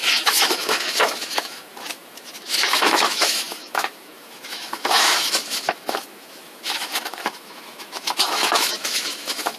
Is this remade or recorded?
remade